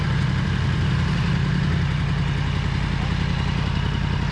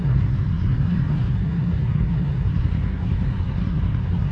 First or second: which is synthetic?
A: second